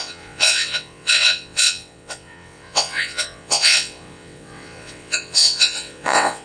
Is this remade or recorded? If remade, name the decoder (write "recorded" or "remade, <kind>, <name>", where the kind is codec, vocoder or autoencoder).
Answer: remade, vocoder, WaveNeXt